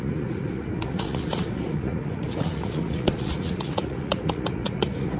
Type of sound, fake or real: fake